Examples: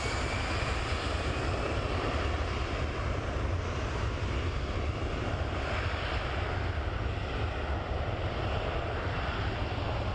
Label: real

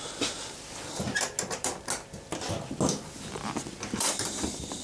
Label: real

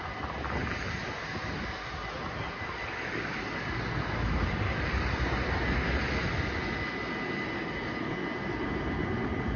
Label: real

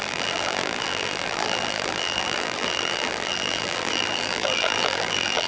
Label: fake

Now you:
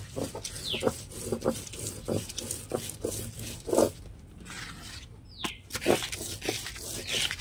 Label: real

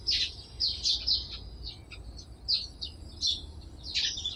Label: real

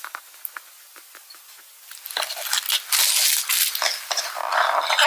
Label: real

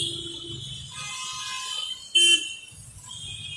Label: real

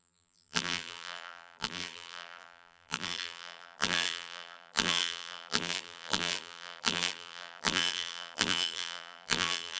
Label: fake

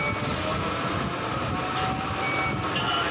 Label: real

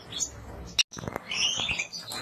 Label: real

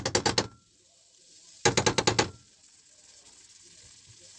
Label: real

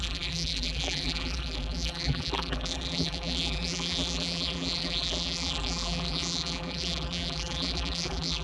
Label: fake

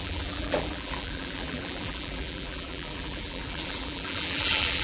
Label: fake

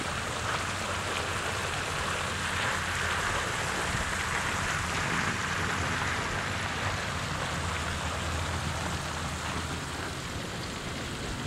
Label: real